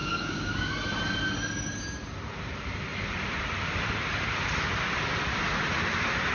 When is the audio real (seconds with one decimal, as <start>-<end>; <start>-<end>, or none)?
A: 0.5-6.3